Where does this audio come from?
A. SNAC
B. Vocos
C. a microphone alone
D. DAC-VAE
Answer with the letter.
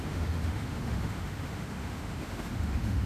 D